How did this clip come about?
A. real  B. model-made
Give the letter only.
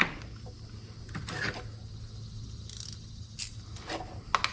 A